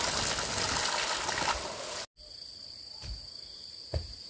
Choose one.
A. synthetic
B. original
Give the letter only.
B